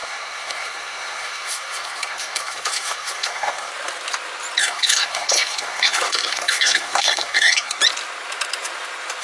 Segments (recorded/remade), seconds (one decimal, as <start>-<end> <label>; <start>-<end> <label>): 0.0-3.7 remade; 3.7-4.6 recorded; 4.6-7.8 remade; 7.8-9.2 recorded